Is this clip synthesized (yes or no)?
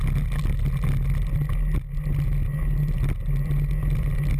no